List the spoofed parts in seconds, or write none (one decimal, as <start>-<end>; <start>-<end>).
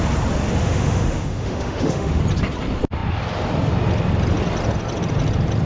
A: 0.6-2.2